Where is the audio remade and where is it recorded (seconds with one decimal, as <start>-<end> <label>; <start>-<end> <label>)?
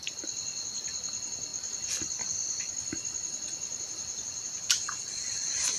0.0-5.8 recorded